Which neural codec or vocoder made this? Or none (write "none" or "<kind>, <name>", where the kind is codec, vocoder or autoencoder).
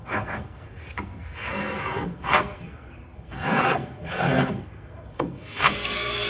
codec, SNAC